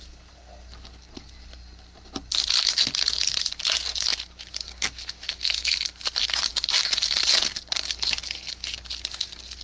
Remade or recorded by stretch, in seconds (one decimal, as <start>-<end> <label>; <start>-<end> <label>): 0.0-9.6 recorded